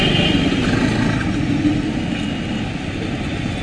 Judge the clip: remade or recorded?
recorded